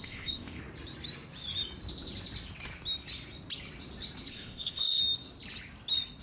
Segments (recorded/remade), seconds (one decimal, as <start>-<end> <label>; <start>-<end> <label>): 0.0-0.6 remade; 0.6-4.3 recorded; 4.3-5.0 remade; 5.0-6.2 recorded